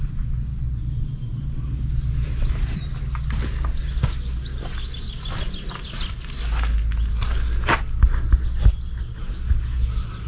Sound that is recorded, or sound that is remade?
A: recorded